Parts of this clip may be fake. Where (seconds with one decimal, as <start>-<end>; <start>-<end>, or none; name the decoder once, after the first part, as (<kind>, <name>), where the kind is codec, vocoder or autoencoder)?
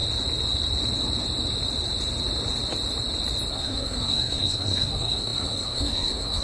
3.5-6.4 (codec, SNAC)